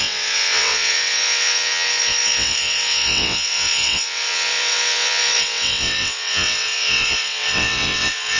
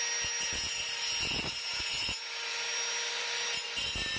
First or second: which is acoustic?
second